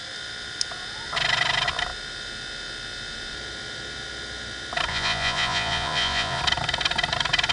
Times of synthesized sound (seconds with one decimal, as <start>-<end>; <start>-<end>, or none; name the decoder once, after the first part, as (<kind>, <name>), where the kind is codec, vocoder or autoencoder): 4.9-6.4 (vocoder, Vocos)